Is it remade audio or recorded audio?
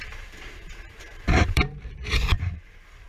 remade